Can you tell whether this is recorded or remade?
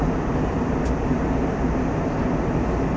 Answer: recorded